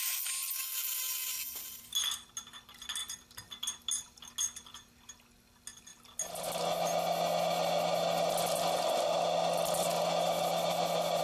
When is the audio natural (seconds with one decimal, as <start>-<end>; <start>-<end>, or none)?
0.0-11.2